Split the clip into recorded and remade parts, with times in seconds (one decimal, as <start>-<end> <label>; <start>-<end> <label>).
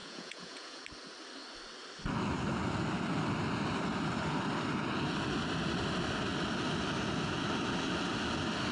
0.0-0.8 remade; 0.8-8.7 recorded